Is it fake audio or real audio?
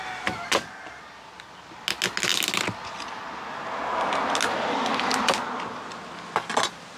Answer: real